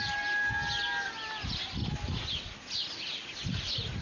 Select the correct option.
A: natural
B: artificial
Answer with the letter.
A